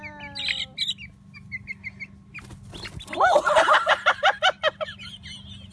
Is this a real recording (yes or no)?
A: yes